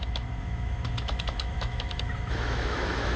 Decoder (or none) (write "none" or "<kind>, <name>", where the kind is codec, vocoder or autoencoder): autoencoder, DAC-VAE